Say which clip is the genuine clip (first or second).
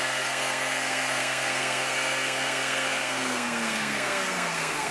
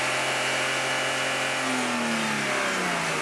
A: second